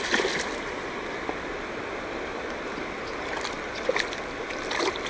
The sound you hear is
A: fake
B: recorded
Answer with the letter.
B